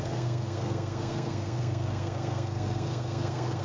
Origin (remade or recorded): remade